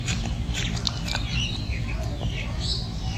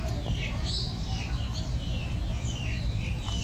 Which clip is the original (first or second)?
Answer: first